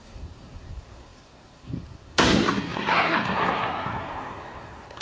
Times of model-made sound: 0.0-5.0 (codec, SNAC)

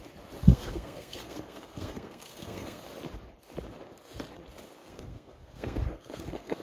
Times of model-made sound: 0.4-2.8 (codec, SNAC); 4.8-6.6

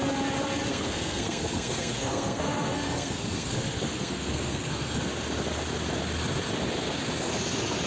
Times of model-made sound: 0.7-5.0 (codec, SNAC)

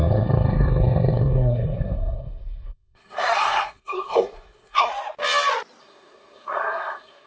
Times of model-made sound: 0.0-4.9 (codec, SNAC); 5.8-7.3

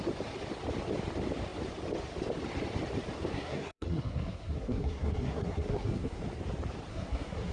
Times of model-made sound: 3.3-6.2 (codec, SNAC); 6.9-7.5

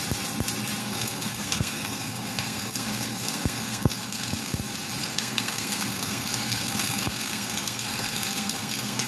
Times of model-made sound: 0.8-4.6 (codec, SNAC); 5.0-9.1

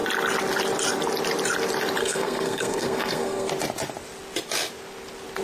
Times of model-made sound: 2.0-3.5 (codec, SNAC)